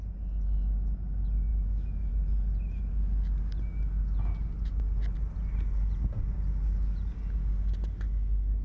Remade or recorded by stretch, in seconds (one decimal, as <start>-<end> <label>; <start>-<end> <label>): 0.0-1.5 recorded; 1.5-2.1 remade; 2.1-8.6 recorded